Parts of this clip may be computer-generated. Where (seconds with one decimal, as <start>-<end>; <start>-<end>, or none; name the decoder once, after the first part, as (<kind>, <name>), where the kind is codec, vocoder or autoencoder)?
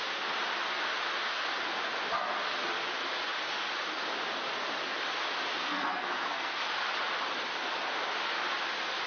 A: 5.6-6.6 (codec, SNAC)